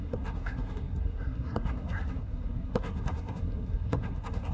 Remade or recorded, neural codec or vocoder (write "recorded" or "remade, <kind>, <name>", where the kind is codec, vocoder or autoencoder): remade, codec, SNAC